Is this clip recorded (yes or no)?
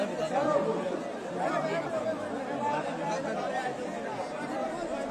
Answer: yes